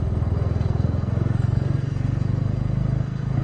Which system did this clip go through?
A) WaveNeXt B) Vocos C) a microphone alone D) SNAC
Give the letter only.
D